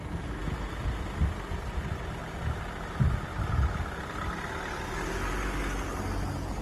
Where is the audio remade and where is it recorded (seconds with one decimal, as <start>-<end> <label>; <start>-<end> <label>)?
0.0-6.6 recorded